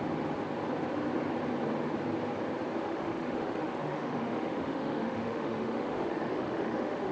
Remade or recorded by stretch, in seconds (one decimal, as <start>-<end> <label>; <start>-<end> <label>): 0.0-2.8 recorded; 2.8-7.1 remade